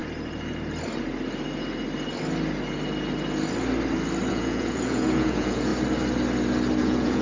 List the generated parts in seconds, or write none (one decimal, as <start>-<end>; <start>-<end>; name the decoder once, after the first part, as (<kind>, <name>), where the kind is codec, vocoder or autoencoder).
4.3-5.7 (vocoder, Vocos); 6.8-7.2